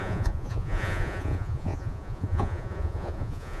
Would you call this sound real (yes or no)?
no